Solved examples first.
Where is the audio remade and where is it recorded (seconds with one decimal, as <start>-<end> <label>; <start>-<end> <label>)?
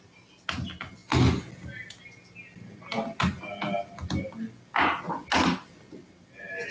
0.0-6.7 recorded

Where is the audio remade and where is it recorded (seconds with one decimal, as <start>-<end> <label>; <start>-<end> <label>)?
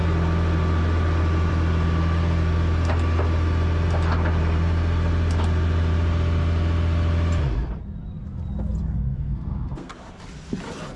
0.0-8.8 recorded; 8.8-9.9 remade; 9.9-11.0 recorded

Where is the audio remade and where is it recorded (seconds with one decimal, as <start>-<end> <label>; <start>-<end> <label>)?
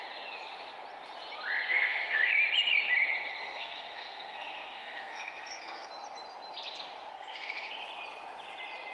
0.0-1.7 recorded; 1.7-2.3 remade; 2.3-3.4 recorded; 3.4-5.9 remade; 5.9-7.1 recorded; 7.1-7.7 remade; 7.7-8.9 recorded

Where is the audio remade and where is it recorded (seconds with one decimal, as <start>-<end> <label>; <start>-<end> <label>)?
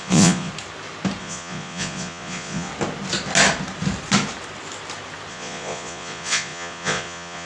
0.0-0.5 remade; 0.5-1.2 recorded; 1.2-2.7 remade; 2.7-5.3 recorded; 5.3-7.5 remade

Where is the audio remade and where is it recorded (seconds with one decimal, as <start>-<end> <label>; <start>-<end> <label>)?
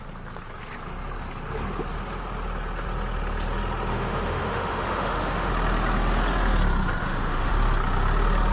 0.0-3.9 recorded; 3.9-5.5 remade; 5.5-7.0 recorded; 7.0-7.5 remade; 7.5-8.5 recorded